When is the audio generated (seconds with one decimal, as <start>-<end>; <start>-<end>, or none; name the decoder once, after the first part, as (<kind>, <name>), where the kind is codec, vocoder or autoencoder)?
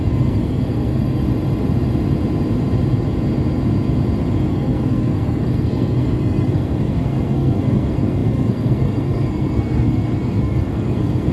0.0-1.2 (codec, SNAC); 4.5-11.3